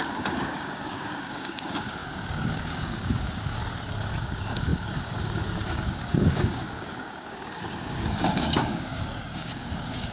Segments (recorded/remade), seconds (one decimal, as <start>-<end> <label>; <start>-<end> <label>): 0.0-3.6 remade; 3.6-4.2 recorded; 4.2-10.1 remade